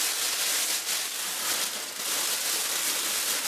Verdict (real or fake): real